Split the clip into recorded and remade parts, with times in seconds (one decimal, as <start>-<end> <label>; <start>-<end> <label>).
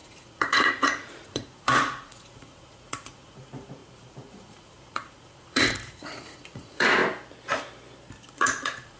0.0-7.0 remade; 7.0-8.3 recorded; 8.3-9.0 remade